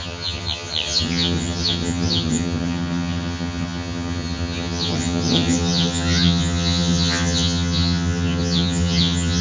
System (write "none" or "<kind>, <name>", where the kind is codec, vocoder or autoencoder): vocoder, HiFi-GAN